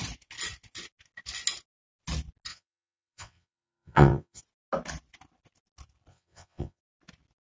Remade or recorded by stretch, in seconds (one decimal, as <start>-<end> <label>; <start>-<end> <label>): 0.0-2.5 recorded; 2.5-4.4 remade; 4.4-6.1 recorded; 6.1-6.8 remade; 6.8-7.4 recorded